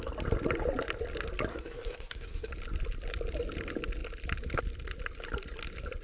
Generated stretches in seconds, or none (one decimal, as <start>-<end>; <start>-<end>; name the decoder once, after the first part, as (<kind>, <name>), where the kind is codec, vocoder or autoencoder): 1.5-2.5 (codec, SNAC)